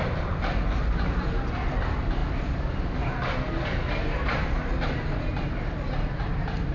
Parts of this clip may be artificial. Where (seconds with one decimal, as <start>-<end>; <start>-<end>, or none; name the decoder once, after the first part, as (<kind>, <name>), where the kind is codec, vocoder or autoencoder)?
none

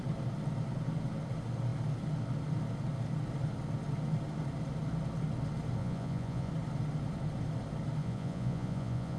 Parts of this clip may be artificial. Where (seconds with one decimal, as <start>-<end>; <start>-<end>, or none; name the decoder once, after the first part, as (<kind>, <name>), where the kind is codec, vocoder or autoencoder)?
5.8-6.5 (vocoder, Vocos); 8.0-9.2

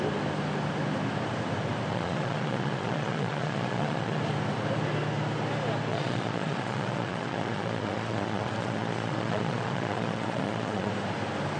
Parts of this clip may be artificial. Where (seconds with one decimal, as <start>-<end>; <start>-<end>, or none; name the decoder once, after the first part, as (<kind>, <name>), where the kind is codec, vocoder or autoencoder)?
1.9-4.2 (vocoder, Vocos); 5.9-10.9

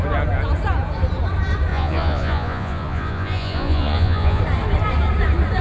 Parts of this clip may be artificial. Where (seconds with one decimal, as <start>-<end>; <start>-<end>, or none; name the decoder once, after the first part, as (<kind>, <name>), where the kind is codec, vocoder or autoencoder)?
1.7-4.4 (vocoder, Vocos)

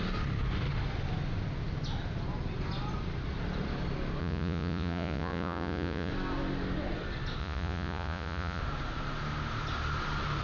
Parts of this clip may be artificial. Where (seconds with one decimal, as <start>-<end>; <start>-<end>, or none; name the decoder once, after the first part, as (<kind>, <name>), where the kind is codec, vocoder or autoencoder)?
4.2-6.1 (vocoder, Vocos); 7.4-8.6